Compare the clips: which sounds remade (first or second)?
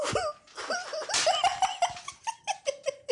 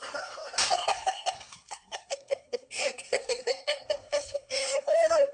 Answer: second